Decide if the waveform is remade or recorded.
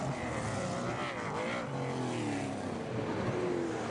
recorded